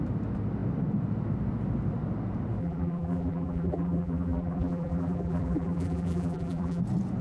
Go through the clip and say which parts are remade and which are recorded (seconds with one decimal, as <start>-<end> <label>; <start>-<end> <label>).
0.0-2.6 recorded; 2.6-6.8 remade; 6.8-7.2 recorded